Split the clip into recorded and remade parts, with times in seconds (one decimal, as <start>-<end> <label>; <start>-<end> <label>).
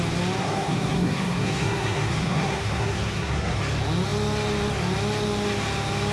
0.0-0.4 recorded; 0.4-3.6 remade; 3.6-6.1 recorded